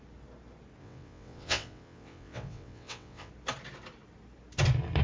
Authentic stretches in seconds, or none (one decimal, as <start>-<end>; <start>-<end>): 0.0-0.8; 3.3-5.0